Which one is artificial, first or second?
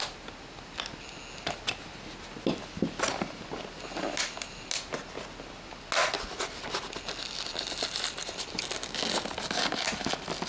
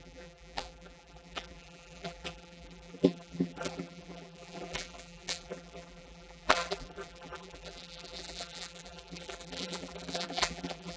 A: second